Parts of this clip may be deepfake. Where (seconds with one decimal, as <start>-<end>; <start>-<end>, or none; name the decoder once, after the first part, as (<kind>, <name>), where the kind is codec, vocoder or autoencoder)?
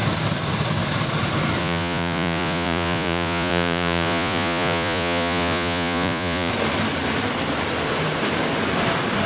1.6-6.5 (vocoder, Vocos)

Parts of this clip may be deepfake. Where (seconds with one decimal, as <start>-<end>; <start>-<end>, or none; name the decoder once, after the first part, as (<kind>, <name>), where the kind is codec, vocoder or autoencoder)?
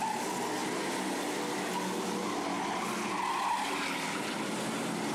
none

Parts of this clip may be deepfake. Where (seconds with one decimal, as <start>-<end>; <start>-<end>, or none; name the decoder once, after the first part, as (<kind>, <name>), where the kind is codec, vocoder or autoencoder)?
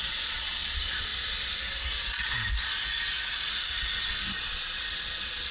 0.0-1.1 (vocoder, Vocos); 4.4-5.5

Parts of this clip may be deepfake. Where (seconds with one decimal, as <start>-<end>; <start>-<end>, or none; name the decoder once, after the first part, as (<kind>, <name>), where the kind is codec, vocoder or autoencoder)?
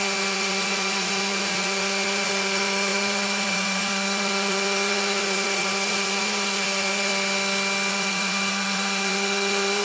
0.0-7.1 (vocoder, Vocos); 7.9-9.8